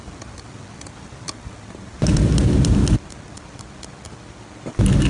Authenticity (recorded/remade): recorded